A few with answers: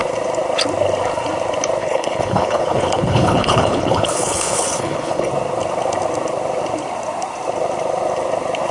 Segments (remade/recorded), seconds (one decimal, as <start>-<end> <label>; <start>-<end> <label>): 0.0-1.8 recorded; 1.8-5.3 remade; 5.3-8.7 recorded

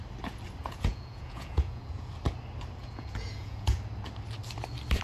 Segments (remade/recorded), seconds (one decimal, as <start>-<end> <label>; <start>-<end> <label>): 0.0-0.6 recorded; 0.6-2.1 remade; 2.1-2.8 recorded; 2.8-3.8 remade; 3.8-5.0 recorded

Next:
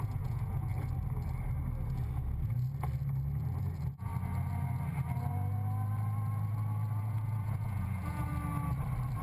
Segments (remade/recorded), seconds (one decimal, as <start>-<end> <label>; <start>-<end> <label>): 0.0-0.7 remade; 0.7-3.6 recorded; 3.6-4.1 remade; 4.1-7.0 recorded; 7.0-8.3 remade; 8.3-9.2 recorded